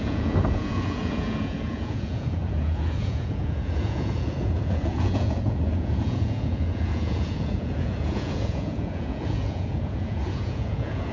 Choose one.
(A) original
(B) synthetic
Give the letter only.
B